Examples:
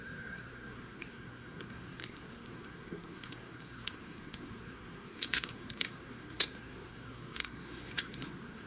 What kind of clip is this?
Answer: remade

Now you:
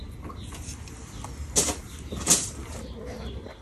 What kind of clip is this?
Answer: recorded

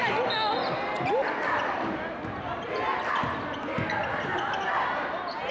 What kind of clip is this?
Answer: recorded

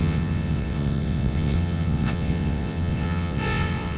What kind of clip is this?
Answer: remade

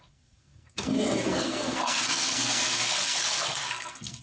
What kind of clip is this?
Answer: remade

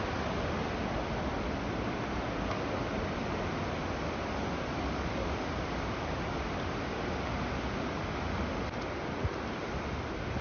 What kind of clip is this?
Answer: recorded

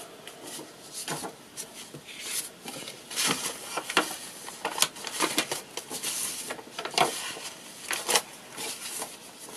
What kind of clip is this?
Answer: recorded